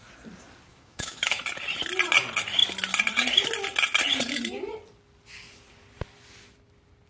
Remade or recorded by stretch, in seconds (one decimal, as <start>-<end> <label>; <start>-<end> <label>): 0.0-0.7 recorded; 0.7-1.4 remade; 1.4-7.1 recorded